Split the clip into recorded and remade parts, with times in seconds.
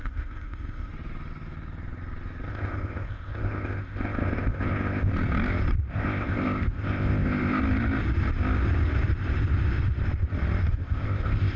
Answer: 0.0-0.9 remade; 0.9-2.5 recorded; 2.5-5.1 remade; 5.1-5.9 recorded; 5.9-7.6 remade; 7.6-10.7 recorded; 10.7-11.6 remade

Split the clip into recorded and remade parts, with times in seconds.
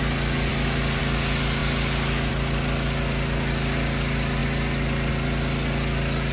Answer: 0.0-6.3 recorded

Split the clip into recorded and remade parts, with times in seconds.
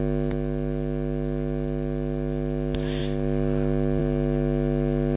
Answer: 0.0-5.2 recorded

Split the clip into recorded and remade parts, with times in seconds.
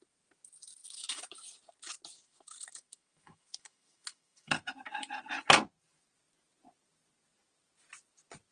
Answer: 0.0-0.8 recorded; 0.8-1.3 remade; 1.3-2.1 recorded; 2.1-5.1 remade; 5.1-8.5 recorded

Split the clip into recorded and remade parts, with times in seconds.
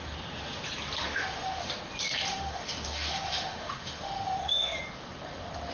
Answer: 0.0-1.0 recorded; 1.0-1.7 remade; 1.7-2.3 recorded; 2.3-4.8 remade; 4.8-5.7 recorded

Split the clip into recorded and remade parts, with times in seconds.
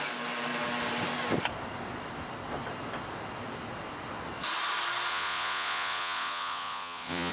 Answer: 0.0-5.1 recorded; 5.1-7.3 remade